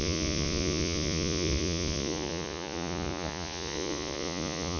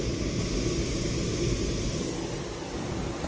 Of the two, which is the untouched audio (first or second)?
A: second